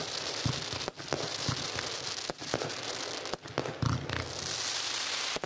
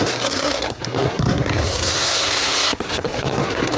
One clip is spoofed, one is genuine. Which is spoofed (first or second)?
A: second